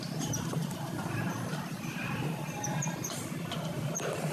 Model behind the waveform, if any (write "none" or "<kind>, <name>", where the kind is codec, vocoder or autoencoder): vocoder, BigVGAN v2